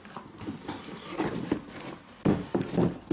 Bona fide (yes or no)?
yes